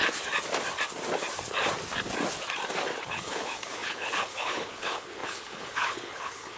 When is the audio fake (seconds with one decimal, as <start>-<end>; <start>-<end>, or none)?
3.0-6.6